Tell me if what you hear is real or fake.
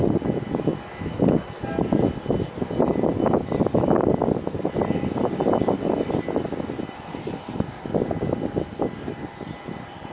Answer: real